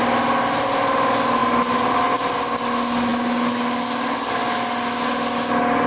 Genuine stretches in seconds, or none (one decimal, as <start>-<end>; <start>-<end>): 0.0-5.9